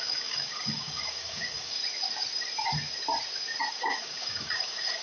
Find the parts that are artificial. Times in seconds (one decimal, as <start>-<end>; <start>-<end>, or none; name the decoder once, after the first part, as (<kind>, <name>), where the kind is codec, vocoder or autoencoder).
0.0-1.8 (codec, DAC); 3.7-5.0